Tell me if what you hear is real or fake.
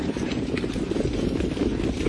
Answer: fake